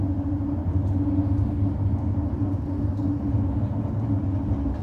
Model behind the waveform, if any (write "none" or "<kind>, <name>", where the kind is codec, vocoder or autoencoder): none